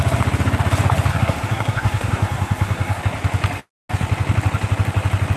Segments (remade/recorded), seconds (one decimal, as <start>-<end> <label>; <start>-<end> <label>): 0.0-1.1 recorded; 1.1-3.0 remade; 3.0-5.4 recorded